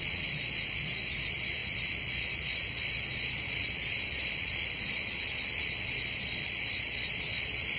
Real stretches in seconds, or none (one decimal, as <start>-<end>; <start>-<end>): none